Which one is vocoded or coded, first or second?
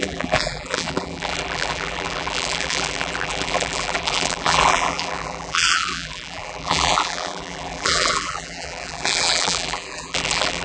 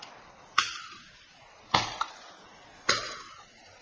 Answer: first